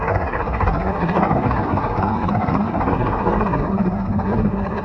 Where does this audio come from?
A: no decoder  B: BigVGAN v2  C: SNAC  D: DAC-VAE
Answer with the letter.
C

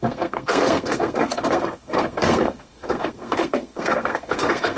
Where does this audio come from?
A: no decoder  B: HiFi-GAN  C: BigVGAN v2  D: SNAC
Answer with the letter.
D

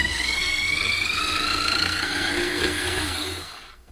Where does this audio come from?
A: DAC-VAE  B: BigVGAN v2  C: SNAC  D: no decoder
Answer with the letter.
C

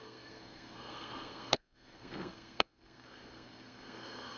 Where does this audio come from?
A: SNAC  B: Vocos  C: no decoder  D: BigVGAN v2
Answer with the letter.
A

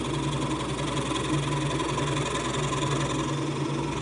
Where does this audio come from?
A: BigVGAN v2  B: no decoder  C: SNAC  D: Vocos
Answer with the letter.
B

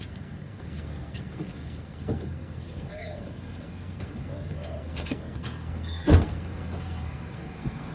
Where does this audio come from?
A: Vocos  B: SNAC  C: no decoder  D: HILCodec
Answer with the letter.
B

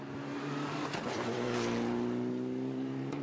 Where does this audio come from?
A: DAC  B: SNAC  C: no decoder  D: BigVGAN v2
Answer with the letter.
C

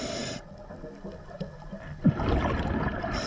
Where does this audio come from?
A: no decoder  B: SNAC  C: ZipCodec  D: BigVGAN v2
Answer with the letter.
A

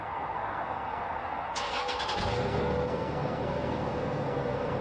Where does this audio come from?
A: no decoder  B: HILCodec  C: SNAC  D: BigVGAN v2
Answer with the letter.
C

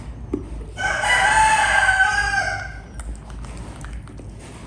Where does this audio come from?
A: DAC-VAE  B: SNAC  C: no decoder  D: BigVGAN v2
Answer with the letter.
C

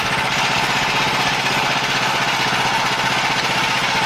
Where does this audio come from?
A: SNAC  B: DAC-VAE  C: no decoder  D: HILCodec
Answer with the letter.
C